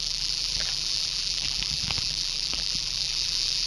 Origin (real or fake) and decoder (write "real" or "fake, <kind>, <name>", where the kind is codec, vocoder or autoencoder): fake, vocoder, BigVGAN v2